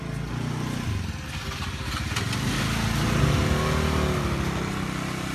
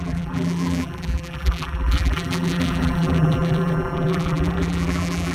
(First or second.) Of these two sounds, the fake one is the second